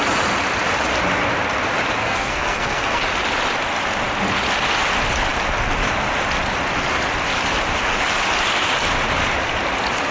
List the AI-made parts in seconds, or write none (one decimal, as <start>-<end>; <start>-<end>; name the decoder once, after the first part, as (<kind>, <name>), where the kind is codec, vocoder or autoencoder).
2.0-3.0 (codec, SNAC)